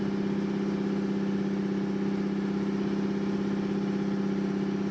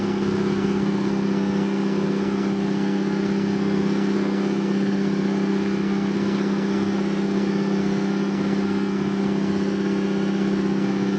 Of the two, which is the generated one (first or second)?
second